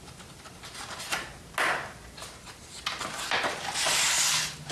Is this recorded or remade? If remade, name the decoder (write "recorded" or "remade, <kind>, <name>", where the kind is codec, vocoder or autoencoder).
recorded